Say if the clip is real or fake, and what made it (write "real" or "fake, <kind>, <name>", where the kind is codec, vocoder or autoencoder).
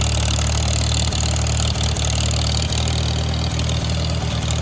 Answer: real